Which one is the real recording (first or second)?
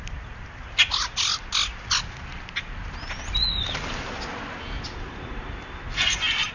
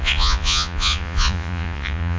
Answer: first